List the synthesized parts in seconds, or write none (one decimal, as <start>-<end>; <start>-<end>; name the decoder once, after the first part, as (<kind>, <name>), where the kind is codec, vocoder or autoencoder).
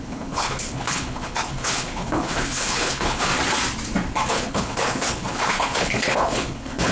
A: 0.0-3.3 (codec, HILCodec); 4.3-6.9